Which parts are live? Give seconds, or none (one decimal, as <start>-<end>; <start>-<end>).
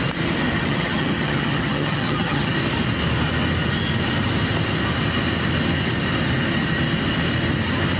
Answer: 0.0-0.6; 2.5-8.0